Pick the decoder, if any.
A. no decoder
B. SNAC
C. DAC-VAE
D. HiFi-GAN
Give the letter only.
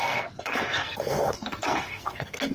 B